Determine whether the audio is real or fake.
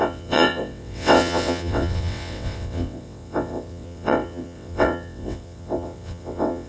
fake